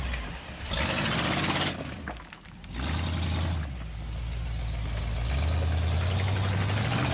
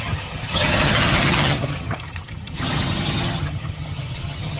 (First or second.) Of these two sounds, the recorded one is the first